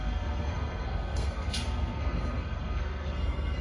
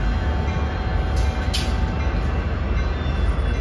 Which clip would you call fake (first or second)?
first